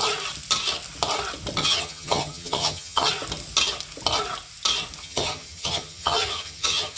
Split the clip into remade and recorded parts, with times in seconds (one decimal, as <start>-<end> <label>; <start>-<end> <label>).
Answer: 0.0-1.6 recorded; 1.6-3.1 remade; 3.1-5.0 recorded; 5.0-7.0 remade